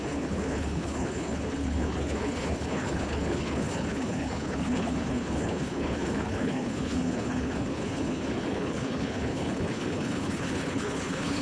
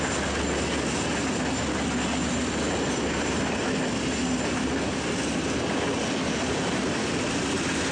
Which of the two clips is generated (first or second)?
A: first